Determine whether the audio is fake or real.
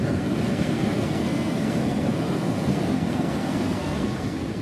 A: fake